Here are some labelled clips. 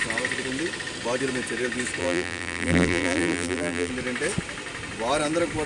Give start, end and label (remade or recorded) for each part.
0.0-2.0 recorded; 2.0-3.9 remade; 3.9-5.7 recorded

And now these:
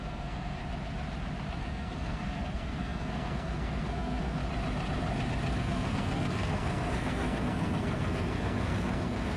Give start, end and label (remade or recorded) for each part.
0.0-0.6 remade; 0.6-1.6 recorded; 1.6-4.4 remade; 4.4-5.6 recorded; 5.6-9.4 remade

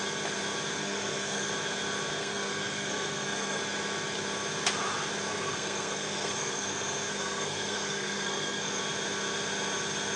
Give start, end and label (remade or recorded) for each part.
0.0-0.8 recorded; 0.8-1.5 remade; 1.5-2.2 recorded; 2.2-3.6 remade; 3.6-5.3 recorded; 5.3-8.8 remade; 8.8-10.2 recorded

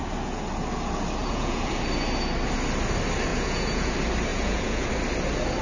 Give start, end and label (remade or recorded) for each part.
0.0-1.2 recorded; 1.2-1.7 remade; 1.7-3.3 recorded; 3.3-3.9 remade; 3.9-4.3 recorded; 4.3-4.9 remade; 4.9-5.6 recorded

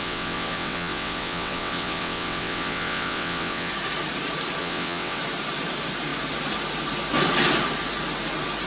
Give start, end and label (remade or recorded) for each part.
0.0-3.7 remade; 3.7-4.6 recorded; 4.6-5.2 remade; 5.2-8.7 recorded

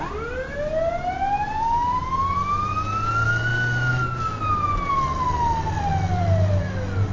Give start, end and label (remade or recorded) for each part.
0.0-7.1 recorded